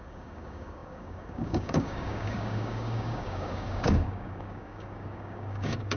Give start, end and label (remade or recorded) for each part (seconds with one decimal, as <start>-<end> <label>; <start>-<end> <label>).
0.0-6.0 remade